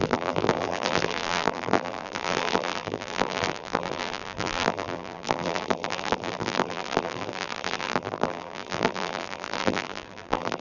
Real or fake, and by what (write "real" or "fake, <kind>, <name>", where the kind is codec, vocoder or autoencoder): fake, vocoder, BigVGAN v2